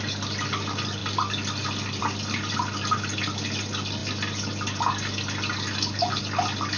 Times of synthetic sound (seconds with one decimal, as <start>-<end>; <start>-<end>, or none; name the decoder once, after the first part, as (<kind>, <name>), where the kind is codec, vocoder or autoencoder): none